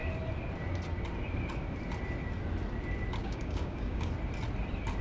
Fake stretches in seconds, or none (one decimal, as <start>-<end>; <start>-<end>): 3.2-4.1